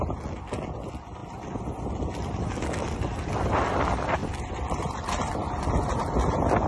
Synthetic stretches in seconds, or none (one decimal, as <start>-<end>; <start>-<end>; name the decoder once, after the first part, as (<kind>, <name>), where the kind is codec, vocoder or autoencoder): 1.2-3.3 (vocoder, BigVGAN v2); 4.2-5.9